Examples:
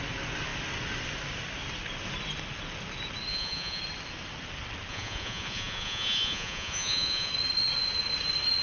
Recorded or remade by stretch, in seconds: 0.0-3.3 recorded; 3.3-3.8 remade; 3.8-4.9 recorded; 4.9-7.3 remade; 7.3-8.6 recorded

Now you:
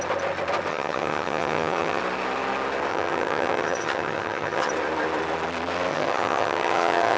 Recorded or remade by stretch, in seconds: 0.0-0.7 recorded; 0.7-2.0 remade; 2.0-2.9 recorded; 2.9-4.7 remade; 4.7-5.9 recorded; 5.9-7.2 remade

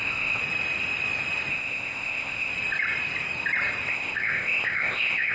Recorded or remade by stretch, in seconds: 0.0-0.4 remade; 0.4-1.5 recorded; 1.5-2.5 remade; 2.5-3.9 recorded; 3.9-5.3 remade